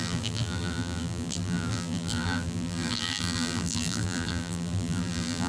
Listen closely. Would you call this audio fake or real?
fake